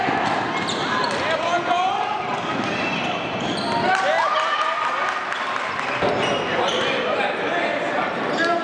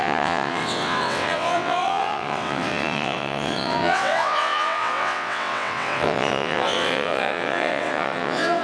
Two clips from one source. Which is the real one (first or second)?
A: first